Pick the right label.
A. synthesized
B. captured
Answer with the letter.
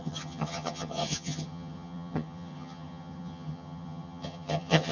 A